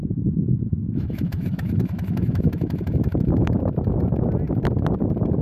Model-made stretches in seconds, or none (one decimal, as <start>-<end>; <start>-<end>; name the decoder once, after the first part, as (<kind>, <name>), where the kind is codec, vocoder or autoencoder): 0.4-3.6 (autoencoder, DAC-VAE)